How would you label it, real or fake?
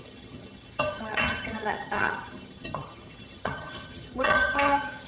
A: fake